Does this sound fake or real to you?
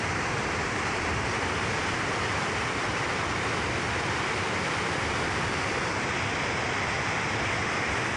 real